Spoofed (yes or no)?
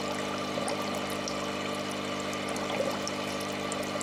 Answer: no